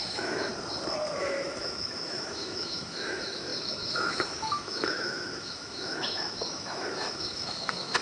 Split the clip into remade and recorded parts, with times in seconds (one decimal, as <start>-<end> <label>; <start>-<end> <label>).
0.0-0.5 remade; 0.5-1.2 recorded; 1.2-8.0 remade